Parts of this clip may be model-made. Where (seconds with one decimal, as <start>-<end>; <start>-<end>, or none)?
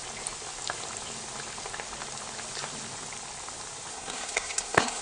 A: 3.9-5.0